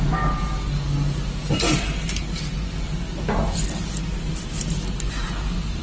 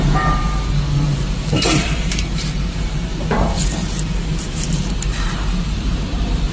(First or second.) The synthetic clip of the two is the second